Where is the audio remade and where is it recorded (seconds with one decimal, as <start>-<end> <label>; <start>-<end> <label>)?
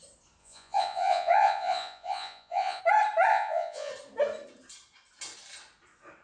0.0-0.4 recorded; 0.4-2.8 remade; 2.8-3.3 recorded; 3.3-3.9 remade; 3.9-6.2 recorded